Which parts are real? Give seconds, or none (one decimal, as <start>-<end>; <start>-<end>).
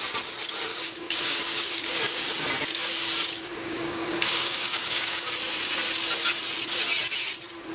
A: 0.0-0.7; 2.3-3.0; 5.3-7.7